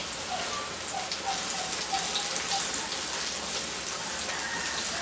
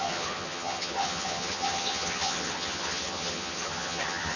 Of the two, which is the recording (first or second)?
first